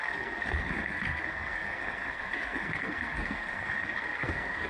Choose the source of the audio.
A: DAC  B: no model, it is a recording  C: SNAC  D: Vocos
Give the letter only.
C